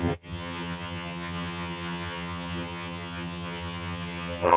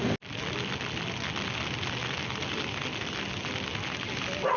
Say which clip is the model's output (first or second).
first